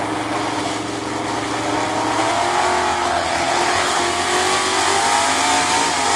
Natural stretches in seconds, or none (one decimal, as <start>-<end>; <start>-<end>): 0.0-3.0; 4.0-6.2